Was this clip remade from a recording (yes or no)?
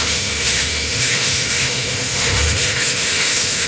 yes